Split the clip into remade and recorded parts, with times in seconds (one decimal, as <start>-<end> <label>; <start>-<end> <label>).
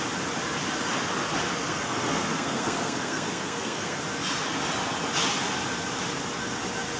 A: 0.0-1.6 recorded; 1.6-4.0 remade; 4.0-7.0 recorded